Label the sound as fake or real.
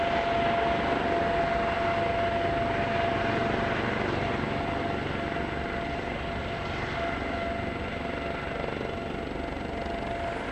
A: real